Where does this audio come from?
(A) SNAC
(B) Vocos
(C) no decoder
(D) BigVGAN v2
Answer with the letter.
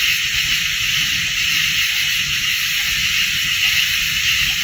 C